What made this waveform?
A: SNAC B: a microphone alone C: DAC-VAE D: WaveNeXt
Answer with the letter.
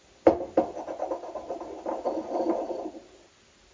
B